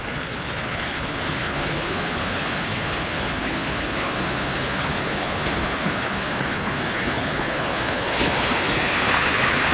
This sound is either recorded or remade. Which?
remade